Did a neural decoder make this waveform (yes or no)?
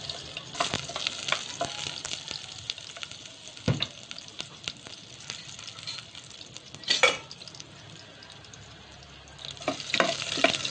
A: no